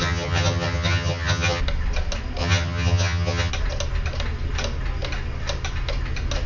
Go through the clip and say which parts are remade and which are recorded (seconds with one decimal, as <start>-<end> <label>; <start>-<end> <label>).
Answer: 0.0-1.6 remade; 1.6-2.4 recorded; 2.4-3.5 remade; 3.5-6.5 recorded